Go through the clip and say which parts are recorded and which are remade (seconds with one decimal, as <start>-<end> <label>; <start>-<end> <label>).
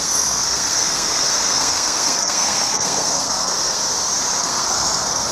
0.0-3.8 remade; 3.8-4.4 recorded; 4.4-5.3 remade